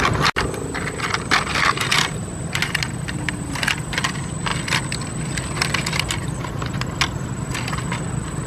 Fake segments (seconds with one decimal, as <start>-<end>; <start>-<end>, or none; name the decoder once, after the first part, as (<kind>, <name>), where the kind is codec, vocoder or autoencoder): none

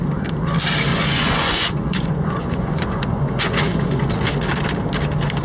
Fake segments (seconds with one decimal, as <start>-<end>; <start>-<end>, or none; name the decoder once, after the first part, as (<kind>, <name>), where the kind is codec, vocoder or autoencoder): 0.9-4.1 (vocoder, Vocos)

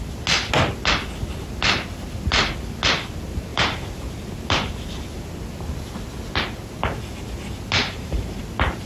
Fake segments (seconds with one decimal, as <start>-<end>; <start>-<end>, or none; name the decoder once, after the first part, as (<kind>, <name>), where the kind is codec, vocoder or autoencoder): 3.5-4.7 (vocoder, BigVGAN v2); 7.8-8.4